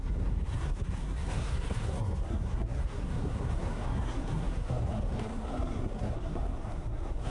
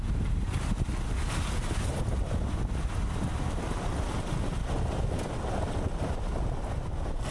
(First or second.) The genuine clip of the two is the second